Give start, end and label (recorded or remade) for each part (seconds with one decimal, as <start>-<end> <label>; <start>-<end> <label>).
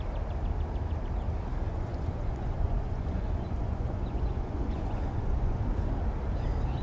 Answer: 0.0-1.7 recorded; 1.7-5.6 remade; 5.6-6.8 recorded